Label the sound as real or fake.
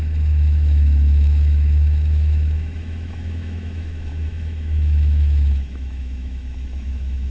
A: fake